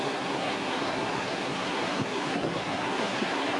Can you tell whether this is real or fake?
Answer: fake